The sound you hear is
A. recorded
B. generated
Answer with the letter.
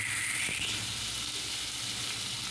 A